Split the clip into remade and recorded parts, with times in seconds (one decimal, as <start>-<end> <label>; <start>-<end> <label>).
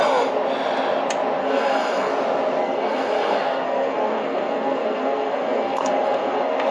0.0-1.4 recorded; 1.4-2.1 remade; 2.1-2.6 recorded; 2.6-6.7 remade